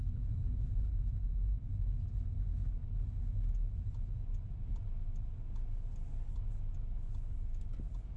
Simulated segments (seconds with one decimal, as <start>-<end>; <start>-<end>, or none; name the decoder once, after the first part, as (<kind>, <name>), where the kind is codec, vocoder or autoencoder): 1.2-1.8 (vocoder, BigVGAN v2)